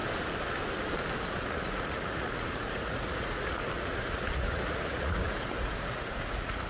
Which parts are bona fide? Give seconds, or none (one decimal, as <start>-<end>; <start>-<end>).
0.0-1.2